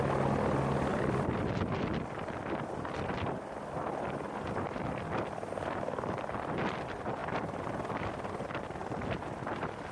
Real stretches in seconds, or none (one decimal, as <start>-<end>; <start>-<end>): 0.0-0.9; 5.5-8.8